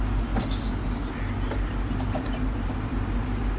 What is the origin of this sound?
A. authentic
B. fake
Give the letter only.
A